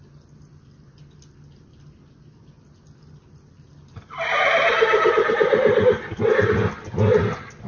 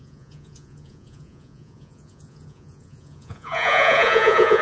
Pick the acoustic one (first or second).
first